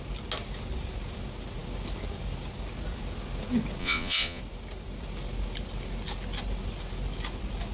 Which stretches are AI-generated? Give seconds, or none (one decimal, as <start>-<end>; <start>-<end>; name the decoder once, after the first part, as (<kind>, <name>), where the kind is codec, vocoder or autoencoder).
3.8-4.4 (vocoder, Vocos)

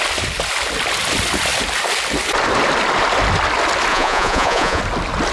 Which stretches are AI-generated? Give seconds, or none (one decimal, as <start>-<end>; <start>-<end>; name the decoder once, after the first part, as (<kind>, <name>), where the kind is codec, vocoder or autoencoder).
3.9-4.8 (vocoder, Vocos)

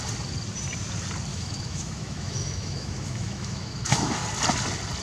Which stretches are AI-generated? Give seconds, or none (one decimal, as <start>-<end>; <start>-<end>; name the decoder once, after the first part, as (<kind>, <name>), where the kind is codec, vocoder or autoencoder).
1.3-4.1 (autoencoder, DAC-VAE)

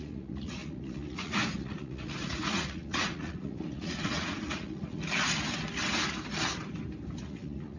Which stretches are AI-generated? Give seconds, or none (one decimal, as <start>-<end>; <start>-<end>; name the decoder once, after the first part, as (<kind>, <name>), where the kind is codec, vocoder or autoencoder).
0.0-5.0 (vocoder, Vocos); 7.2-7.8

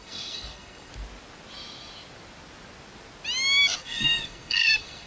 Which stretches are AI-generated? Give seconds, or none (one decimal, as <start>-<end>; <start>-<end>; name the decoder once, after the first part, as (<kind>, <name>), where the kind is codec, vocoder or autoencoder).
0.0-0.9 (codec, SNAC); 3.8-5.1

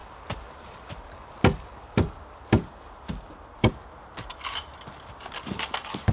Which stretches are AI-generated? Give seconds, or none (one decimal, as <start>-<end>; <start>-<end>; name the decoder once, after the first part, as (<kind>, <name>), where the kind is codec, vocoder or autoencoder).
0.0-3.7 (vocoder, BigVGAN v2)

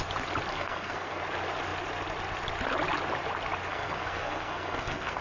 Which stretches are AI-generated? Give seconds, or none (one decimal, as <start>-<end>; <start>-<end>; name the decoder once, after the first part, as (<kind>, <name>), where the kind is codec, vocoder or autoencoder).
0.5-1.2 (codec, SNAC); 3.7-5.2